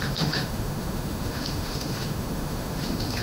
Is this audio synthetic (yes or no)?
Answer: yes